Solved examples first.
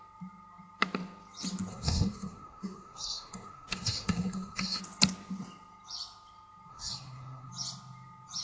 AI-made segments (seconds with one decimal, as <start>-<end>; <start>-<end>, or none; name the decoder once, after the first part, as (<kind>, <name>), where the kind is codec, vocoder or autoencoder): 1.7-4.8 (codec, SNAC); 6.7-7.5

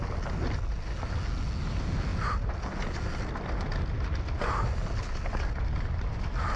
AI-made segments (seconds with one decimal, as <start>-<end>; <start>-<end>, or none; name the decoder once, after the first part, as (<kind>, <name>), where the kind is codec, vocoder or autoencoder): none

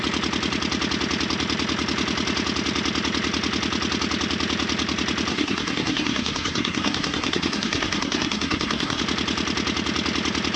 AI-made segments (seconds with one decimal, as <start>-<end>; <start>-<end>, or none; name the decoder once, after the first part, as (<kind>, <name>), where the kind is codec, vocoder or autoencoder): 5.3-9.0 (codec, SNAC)

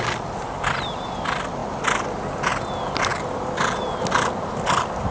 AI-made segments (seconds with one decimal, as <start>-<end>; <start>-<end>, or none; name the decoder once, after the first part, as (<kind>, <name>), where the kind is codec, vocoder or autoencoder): none